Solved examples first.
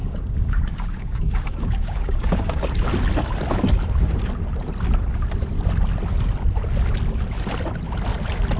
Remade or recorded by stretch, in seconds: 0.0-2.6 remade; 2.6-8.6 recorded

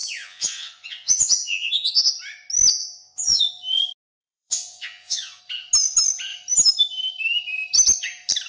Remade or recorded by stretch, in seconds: 0.0-1.7 remade; 1.7-2.8 recorded; 2.8-3.4 remade; 3.4-4.2 recorded; 4.2-5.4 remade; 5.4-8.5 recorded

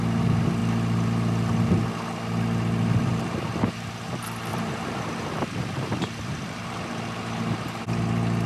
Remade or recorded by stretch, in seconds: 0.0-4.5 recorded; 4.5-7.8 remade; 7.8-8.5 recorded

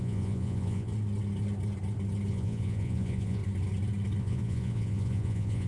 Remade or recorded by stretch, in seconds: 0.0-0.9 remade; 0.9-2.3 recorded; 2.3-3.4 remade; 3.4-4.2 recorded; 4.2-5.7 remade

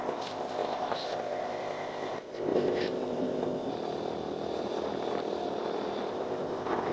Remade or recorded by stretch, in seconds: 0.0-3.7 remade; 3.7-6.1 recorded; 6.1-6.9 remade

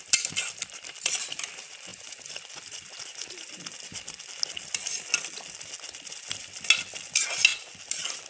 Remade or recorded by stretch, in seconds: 0.0-8.3 recorded

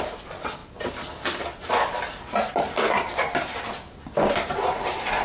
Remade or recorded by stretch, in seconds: 0.0-5.2 recorded